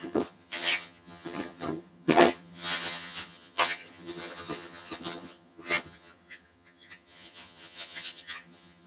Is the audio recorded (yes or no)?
no